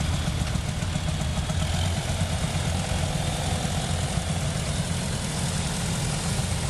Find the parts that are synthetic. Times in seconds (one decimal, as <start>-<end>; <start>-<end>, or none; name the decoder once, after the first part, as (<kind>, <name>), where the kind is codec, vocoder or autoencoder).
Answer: none